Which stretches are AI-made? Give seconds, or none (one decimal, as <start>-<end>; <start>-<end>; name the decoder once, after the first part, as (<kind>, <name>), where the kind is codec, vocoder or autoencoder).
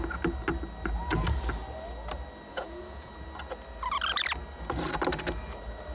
2.5-3.1 (vocoder, Vocos)